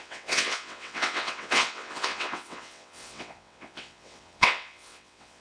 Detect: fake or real fake